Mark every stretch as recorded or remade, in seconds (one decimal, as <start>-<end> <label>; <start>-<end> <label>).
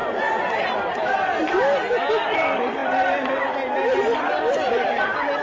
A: 0.0-5.4 recorded